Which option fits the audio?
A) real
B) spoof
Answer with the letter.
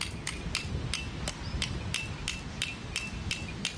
A